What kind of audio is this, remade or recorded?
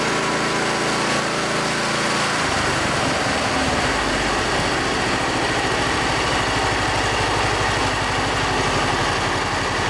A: recorded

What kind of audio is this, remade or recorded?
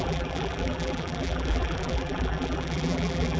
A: remade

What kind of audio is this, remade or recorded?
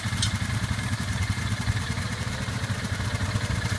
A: remade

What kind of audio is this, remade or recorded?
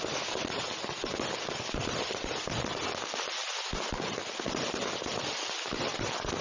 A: recorded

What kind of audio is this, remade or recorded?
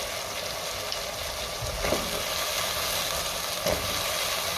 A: recorded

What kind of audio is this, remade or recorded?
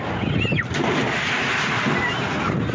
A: recorded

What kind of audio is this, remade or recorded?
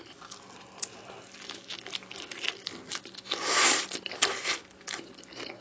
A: recorded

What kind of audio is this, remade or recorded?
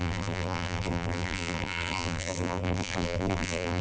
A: remade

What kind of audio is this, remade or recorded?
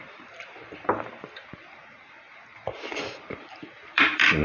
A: remade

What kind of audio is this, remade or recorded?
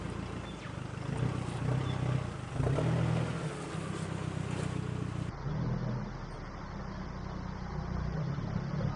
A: recorded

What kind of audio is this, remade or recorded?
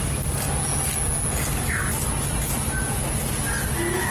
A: recorded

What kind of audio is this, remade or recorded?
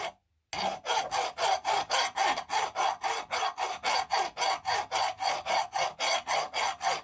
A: recorded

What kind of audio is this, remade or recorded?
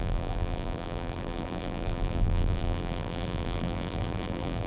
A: remade